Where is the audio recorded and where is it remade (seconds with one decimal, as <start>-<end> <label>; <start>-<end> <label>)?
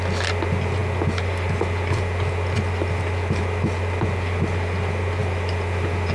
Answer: 0.0-6.1 recorded